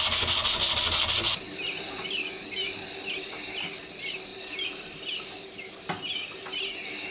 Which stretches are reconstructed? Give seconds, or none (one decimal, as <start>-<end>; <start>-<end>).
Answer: none